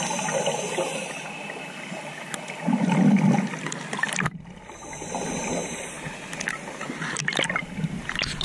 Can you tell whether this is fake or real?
real